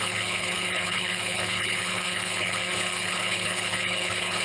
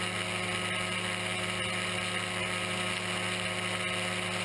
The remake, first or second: first